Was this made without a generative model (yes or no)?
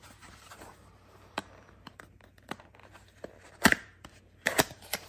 no